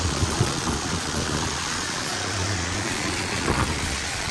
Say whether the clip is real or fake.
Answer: fake